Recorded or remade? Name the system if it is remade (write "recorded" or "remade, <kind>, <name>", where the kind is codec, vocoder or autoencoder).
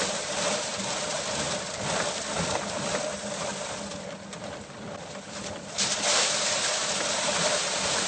remade, vocoder, BigVGAN v2